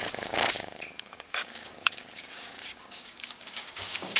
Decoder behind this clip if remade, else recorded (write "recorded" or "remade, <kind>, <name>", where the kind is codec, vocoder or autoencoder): remade, codec, DAC